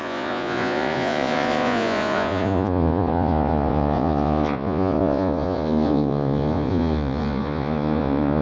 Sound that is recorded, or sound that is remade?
remade